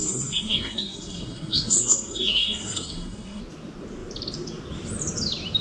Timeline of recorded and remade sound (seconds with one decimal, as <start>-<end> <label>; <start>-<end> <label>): 0.0-3.4 remade; 3.4-5.6 recorded